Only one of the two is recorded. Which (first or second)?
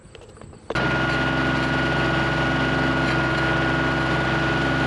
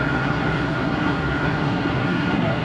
first